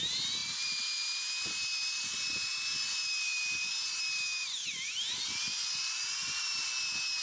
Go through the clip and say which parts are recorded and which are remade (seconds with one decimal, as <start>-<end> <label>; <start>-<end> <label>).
0.0-0.4 recorded; 0.4-4.0 remade; 4.0-4.6 recorded; 4.6-6.7 remade; 6.7-7.2 recorded